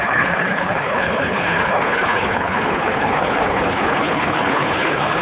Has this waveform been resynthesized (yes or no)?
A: yes